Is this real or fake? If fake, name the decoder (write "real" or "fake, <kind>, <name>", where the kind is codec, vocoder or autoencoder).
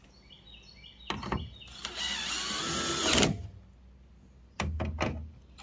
real